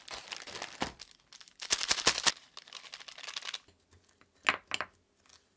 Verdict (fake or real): real